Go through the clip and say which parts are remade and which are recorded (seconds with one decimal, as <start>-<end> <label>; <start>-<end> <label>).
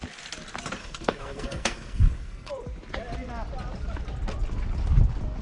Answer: 0.0-0.8 recorded; 0.8-2.5 remade; 2.5-5.4 recorded